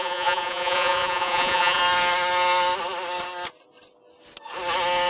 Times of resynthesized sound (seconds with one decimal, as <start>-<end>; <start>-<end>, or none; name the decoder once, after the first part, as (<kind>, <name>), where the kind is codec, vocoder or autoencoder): 0.0-1.8 (vocoder, Vocos)